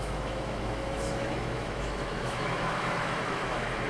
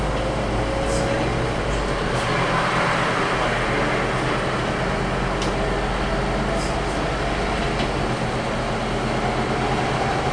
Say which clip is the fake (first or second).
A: first